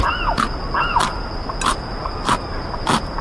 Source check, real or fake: real